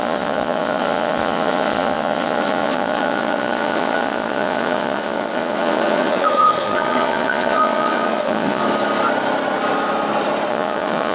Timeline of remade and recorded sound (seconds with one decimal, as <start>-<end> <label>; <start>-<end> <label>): 0.0-8.6 remade; 8.6-10.5 recorded; 10.5-11.1 remade